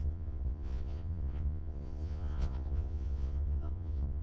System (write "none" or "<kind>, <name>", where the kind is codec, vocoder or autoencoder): vocoder, Vocos